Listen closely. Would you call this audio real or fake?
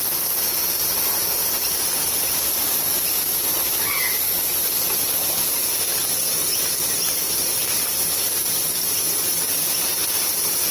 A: real